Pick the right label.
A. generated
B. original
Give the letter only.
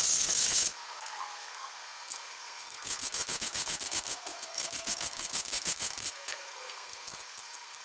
A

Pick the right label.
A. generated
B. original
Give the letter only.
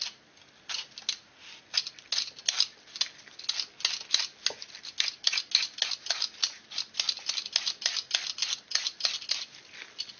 B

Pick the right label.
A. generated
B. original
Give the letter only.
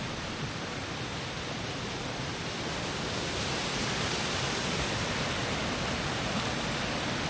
B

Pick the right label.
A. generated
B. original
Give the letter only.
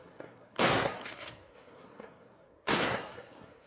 A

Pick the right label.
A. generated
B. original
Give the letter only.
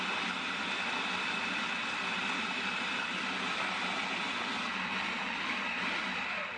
B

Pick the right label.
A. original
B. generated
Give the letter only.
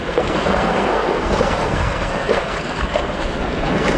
B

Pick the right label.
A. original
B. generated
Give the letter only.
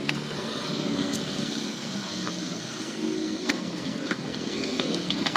B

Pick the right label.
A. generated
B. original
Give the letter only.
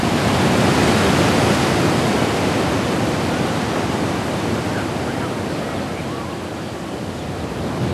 B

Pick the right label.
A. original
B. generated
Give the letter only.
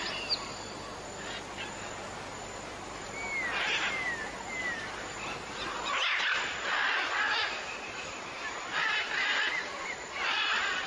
A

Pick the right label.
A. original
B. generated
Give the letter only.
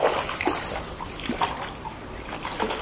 A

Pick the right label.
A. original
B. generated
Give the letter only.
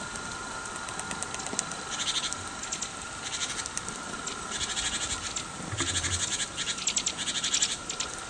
A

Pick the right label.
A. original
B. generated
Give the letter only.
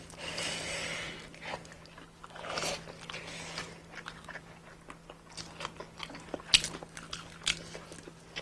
A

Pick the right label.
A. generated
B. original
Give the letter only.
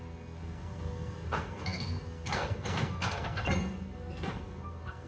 A